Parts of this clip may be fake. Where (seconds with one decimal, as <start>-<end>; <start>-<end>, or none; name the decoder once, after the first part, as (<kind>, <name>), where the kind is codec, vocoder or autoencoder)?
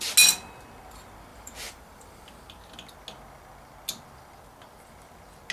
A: 1.3-2.3 (vocoder, BigVGAN v2)